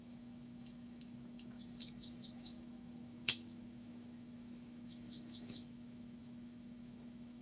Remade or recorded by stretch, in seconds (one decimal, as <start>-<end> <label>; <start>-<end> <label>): 0.0-7.4 remade